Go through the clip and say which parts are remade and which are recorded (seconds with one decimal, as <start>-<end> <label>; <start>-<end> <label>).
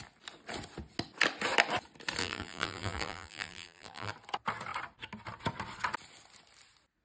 0.0-2.2 recorded; 2.2-4.1 remade; 4.1-7.0 recorded